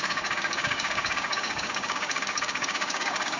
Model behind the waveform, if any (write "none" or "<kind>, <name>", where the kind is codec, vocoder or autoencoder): codec, DAC